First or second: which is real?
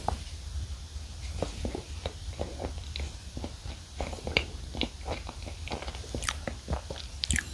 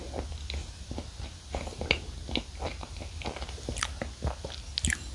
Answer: second